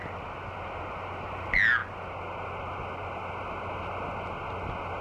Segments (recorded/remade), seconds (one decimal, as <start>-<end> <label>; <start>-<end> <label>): 0.0-5.0 recorded